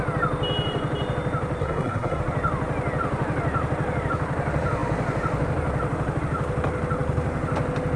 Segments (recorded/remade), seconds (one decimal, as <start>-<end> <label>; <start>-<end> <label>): 0.0-1.6 recorded; 1.6-2.2 remade; 2.2-8.0 recorded